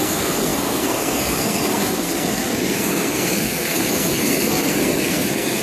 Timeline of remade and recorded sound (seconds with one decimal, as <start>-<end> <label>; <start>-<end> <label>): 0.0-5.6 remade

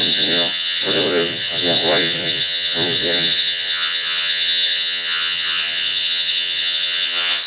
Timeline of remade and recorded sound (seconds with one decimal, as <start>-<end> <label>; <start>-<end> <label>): 0.0-7.5 remade

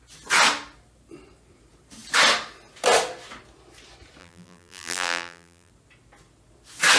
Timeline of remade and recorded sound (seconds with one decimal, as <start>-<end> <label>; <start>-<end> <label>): 0.0-4.2 recorded; 4.2-5.7 remade; 5.7-7.0 recorded

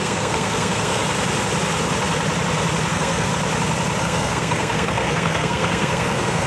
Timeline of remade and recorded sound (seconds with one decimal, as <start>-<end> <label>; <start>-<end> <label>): 0.0-1.0 remade; 1.0-2.9 recorded; 2.9-3.3 remade; 3.3-4.0 recorded; 4.0-6.5 remade